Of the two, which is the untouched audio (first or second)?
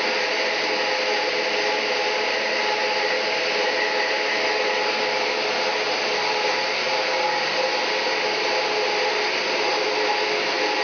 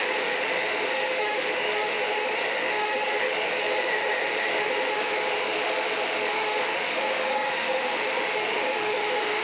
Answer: first